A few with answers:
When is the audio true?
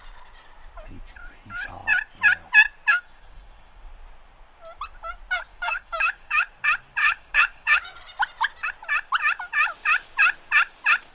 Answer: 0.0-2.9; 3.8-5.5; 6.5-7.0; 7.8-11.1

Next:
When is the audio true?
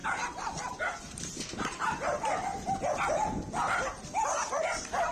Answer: 0.0-5.1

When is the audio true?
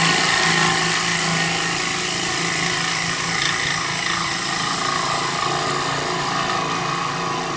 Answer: 0.0-7.6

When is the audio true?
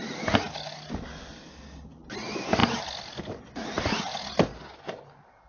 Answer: 0.0-5.5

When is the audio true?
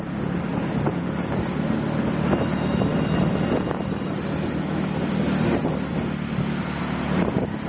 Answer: 0.0-7.7